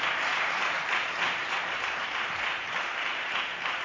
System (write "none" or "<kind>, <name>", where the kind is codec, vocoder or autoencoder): vocoder, BigVGAN v2